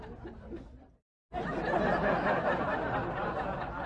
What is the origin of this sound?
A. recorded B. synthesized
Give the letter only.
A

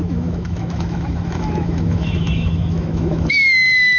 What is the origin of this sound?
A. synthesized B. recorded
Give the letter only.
A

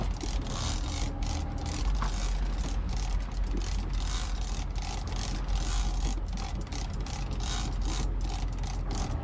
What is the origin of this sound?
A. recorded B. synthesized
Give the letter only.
A